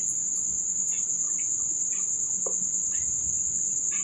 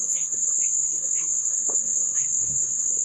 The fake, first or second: second